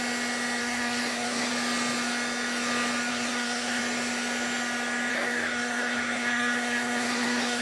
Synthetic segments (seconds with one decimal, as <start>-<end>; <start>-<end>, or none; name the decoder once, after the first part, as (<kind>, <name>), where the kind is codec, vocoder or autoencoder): 0.6-1.5 (codec, SNAC); 3.1-3.8; 5.1-7.6